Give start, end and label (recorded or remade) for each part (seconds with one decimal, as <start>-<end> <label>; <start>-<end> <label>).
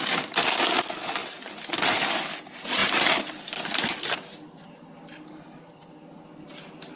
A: 0.0-7.0 recorded